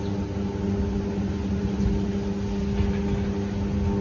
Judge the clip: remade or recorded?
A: recorded